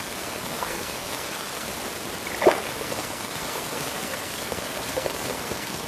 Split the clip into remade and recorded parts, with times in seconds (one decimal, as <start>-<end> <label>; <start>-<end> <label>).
0.0-1.7 remade; 1.7-2.5 recorded; 2.5-5.9 remade